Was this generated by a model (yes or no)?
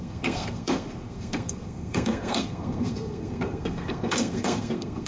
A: yes